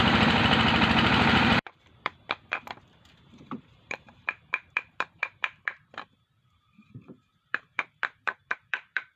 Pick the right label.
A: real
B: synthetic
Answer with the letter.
B